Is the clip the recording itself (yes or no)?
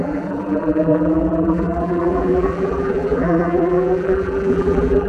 no